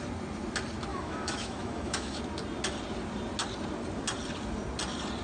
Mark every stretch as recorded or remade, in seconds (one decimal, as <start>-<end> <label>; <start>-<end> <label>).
0.0-0.9 recorded; 0.9-2.2 remade; 2.2-5.2 recorded